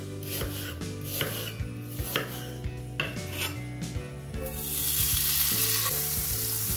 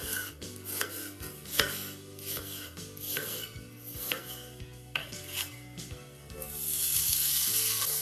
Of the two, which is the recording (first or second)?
first